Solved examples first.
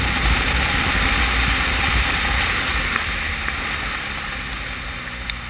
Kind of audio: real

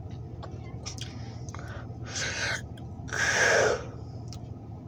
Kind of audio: real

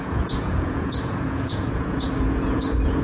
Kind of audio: fake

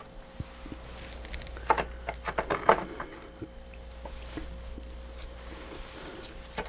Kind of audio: real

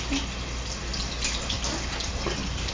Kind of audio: real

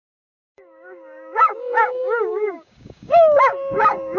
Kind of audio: fake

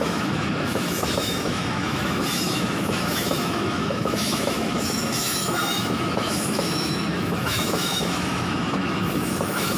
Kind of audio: fake